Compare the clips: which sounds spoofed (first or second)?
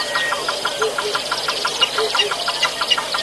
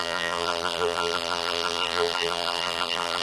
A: second